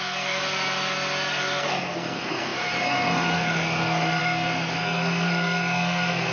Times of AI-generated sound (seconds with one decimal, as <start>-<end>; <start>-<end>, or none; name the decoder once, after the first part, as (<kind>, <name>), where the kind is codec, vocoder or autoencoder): 0.0-0.4 (codec, SNAC); 1.3-6.3